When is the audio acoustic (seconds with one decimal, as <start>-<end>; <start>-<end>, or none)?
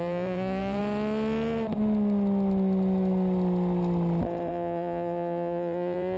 0.8-4.5